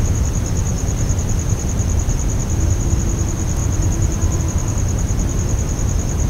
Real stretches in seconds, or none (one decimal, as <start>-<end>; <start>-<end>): 0.0-0.7; 3.0-3.6; 4.4-6.3